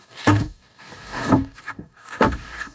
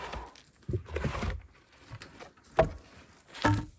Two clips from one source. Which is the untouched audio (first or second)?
second